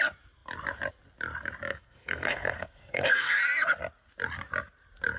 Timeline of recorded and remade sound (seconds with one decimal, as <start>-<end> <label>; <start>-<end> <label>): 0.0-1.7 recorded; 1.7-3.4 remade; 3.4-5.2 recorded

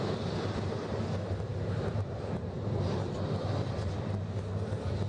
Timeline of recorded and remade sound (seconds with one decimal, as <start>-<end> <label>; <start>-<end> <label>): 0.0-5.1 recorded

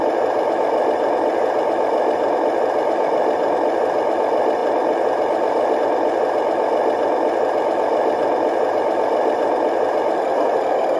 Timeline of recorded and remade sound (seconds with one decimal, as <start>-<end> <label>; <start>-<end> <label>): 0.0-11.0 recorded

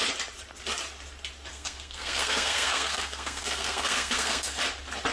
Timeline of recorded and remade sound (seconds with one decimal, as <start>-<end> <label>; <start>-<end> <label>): 0.0-1.5 recorded; 1.5-4.6 remade; 4.6-5.1 recorded

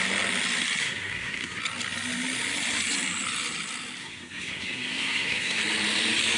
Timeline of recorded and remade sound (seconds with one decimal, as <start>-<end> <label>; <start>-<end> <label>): 0.0-0.8 recorded; 0.8-1.6 remade; 1.6-4.0 recorded; 4.0-5.6 remade; 5.6-6.4 recorded